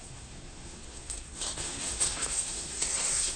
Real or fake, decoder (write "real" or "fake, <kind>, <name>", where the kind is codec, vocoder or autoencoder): fake, codec, SNAC